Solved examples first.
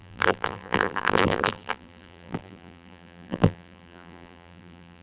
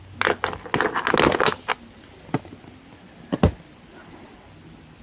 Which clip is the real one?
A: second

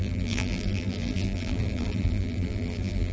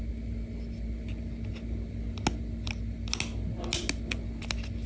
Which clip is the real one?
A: second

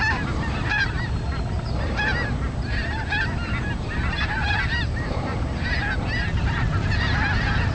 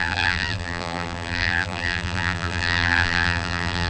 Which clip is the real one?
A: first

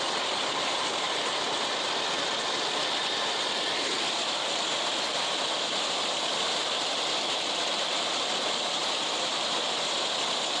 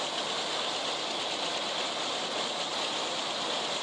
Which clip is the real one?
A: second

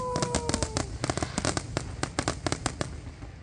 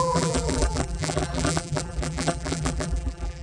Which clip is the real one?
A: first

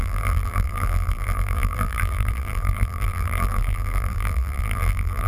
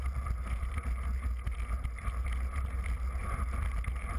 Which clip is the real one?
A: second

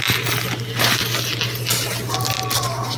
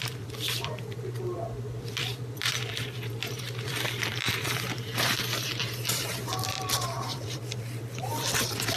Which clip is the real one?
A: first